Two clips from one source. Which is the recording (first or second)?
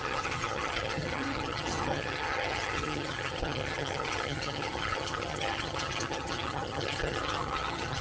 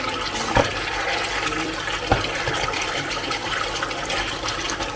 second